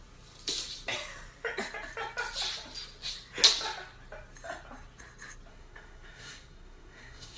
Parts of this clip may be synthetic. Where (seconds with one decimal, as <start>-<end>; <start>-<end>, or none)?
5.5-7.4